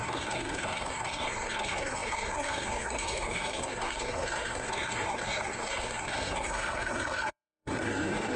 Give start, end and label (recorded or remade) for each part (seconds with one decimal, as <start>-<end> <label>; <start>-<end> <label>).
0.0-8.4 remade